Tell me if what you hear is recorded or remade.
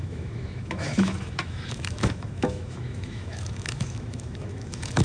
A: remade